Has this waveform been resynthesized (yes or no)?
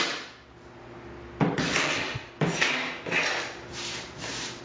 no